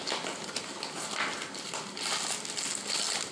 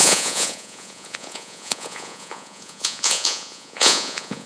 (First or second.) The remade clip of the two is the second